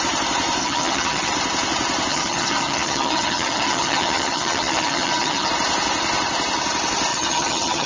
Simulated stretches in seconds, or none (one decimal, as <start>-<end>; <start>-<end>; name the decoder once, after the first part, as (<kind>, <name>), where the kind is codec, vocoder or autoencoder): 0.6-1.3 (vocoder, HiFi-GAN); 2.1-5.5; 7.1-7.9